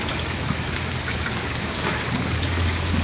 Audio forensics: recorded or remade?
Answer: remade